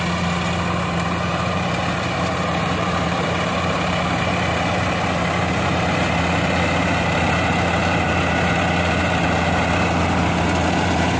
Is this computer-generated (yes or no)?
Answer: yes